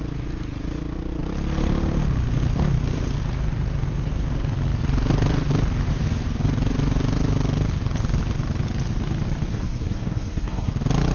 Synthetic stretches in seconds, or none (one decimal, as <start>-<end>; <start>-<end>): 9.5-10.7